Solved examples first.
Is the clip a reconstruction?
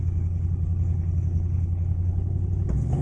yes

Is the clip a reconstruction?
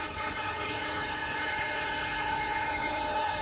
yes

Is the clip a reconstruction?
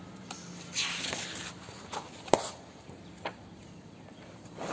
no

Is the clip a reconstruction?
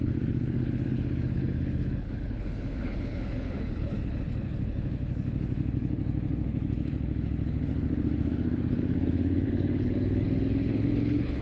yes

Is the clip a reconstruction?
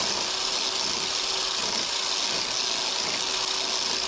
no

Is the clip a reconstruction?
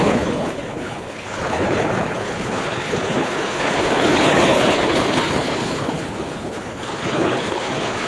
yes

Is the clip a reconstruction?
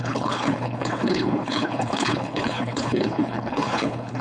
yes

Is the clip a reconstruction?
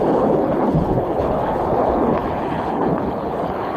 yes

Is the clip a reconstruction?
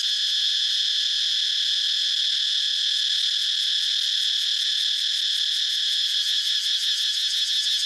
no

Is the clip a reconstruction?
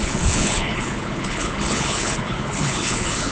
yes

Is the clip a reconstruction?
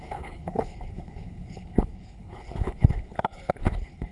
yes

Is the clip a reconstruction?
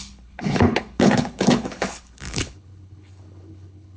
yes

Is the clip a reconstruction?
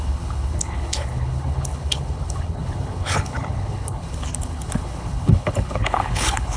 yes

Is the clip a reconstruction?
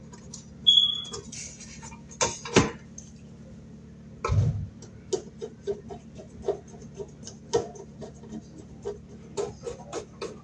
no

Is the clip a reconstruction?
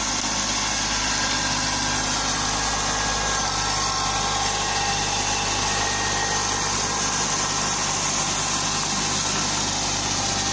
no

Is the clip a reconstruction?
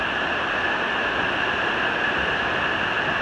no